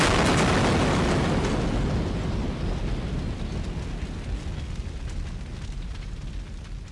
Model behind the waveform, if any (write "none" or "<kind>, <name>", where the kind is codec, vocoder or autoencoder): none